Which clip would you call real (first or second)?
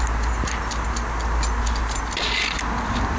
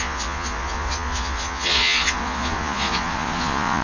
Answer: first